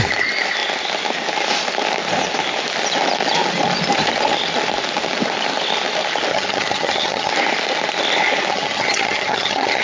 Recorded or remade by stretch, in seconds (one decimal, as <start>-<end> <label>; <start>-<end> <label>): 0.0-6.3 recorded; 6.3-7.3 remade; 7.3-8.5 recorded; 8.5-9.8 remade